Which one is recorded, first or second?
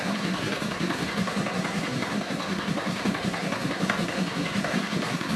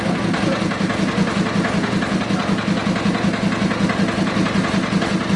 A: second